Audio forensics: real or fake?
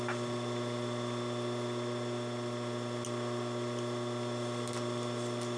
real